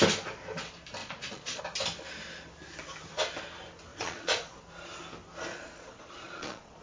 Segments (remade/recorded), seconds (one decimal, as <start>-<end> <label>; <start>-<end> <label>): 0.0-1.0 recorded; 1.0-1.6 remade; 1.6-3.9 recorded; 3.9-4.5 remade; 4.5-5.5 recorded; 5.5-6.8 remade